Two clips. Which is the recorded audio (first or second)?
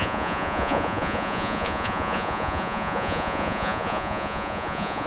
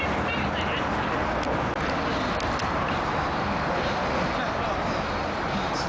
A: second